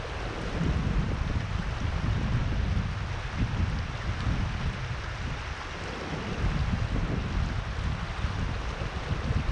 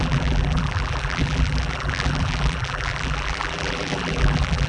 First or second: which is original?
first